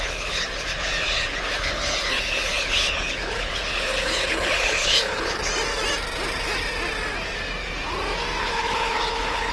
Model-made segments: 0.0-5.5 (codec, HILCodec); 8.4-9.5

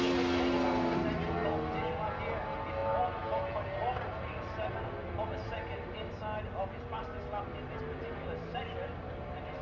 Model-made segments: none

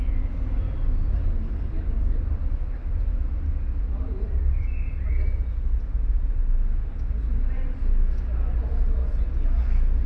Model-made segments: none

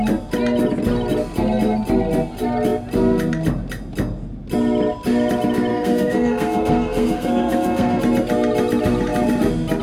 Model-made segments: 5.7-8.0 (codec, SNAC)

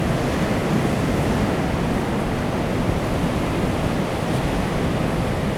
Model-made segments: none

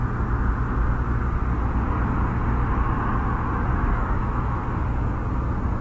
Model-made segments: 3.7-4.6 (autoencoder, DAC-VAE)

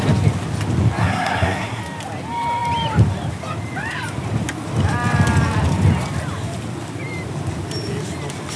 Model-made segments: 1.0-1.8 (codec, SNAC)

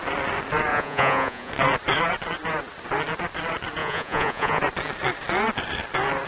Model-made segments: 0.7-1.5 (vocoder, Vocos); 3.8-4.6